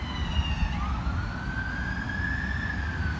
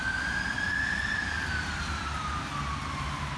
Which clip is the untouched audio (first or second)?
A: first